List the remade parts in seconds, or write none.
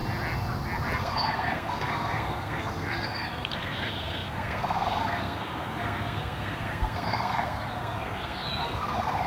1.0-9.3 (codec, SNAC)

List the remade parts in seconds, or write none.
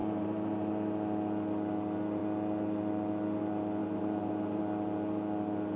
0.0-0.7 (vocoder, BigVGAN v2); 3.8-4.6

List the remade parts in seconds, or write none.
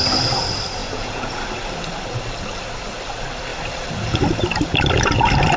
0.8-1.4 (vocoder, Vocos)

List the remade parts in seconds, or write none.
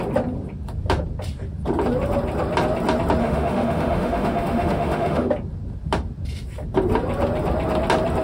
3.2-5.3 (autoencoder, DAC-VAE)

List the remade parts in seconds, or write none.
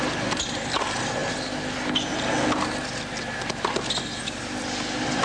none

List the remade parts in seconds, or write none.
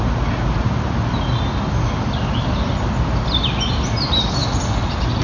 none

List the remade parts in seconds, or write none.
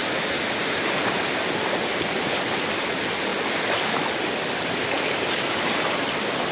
none